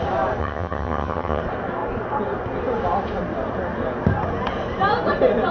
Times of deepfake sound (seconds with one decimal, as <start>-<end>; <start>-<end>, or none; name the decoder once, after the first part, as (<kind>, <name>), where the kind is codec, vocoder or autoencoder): 0.4-1.4 (vocoder, HiFi-GAN)